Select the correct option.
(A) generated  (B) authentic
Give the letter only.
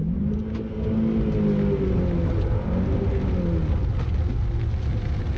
B